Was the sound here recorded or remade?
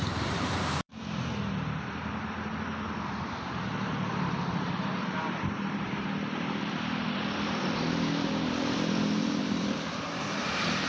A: remade